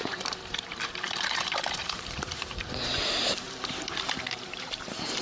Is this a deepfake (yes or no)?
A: yes